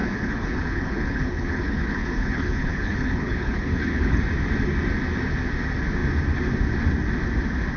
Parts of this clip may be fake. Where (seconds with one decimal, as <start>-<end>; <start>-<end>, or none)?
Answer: 0.0-4.2